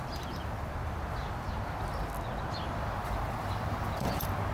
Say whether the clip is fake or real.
real